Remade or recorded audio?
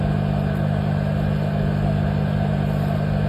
recorded